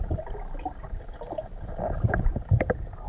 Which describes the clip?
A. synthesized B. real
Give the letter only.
A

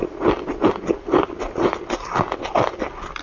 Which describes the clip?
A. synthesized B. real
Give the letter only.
B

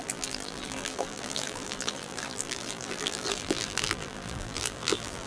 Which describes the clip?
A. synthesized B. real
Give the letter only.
A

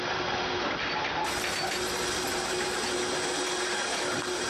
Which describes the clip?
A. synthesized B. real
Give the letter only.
B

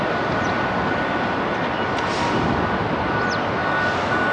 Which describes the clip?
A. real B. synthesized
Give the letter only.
A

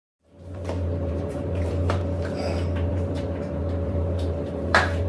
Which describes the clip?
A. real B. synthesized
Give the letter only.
B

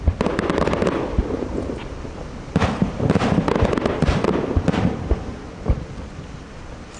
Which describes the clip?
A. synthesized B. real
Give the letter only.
B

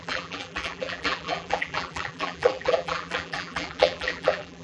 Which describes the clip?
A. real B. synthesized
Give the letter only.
B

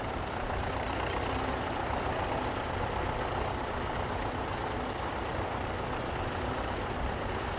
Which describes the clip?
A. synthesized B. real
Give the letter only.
B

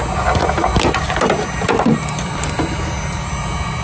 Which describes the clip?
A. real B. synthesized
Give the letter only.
A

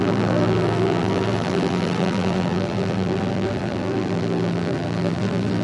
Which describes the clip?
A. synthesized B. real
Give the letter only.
A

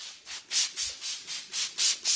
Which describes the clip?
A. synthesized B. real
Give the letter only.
B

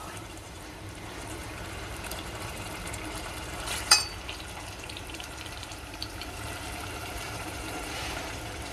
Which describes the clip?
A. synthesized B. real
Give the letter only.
A